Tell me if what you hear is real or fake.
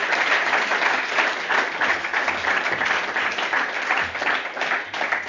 real